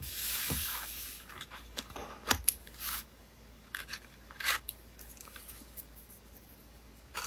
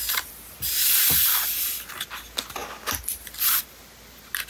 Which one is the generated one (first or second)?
first